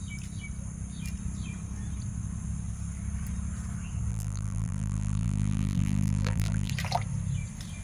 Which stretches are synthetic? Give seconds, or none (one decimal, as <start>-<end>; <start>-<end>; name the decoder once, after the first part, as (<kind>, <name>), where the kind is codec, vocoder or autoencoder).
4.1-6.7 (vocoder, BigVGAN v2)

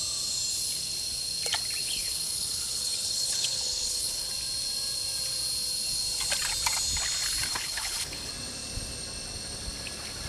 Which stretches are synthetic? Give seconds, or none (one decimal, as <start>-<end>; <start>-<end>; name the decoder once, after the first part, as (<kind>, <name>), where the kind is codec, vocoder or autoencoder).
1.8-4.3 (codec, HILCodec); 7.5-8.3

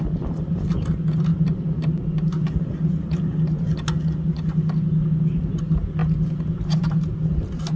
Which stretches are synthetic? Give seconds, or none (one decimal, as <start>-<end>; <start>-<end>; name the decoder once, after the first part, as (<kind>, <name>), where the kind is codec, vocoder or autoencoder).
none

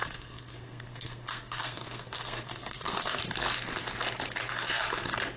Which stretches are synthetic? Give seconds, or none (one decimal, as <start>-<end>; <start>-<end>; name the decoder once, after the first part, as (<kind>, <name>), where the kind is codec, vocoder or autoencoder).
0.0-3.2 (codec, SNAC)

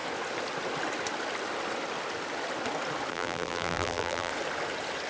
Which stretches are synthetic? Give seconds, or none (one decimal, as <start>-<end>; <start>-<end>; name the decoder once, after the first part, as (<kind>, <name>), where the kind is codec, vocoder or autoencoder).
3.1-4.3 (vocoder, BigVGAN v2)